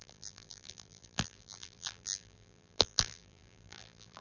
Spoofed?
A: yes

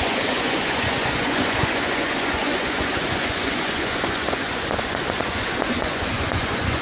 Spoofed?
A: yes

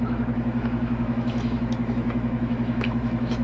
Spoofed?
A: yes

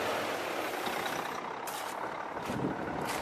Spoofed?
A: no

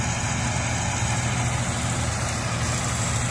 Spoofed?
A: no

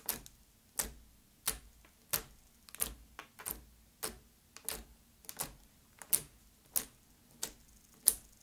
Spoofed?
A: no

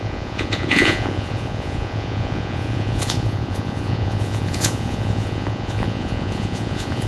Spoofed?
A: yes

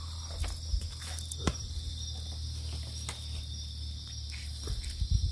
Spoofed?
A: no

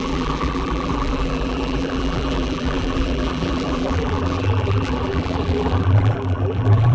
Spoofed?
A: yes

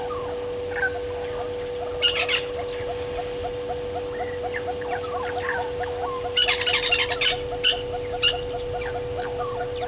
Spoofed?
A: no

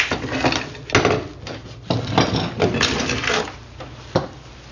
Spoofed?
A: no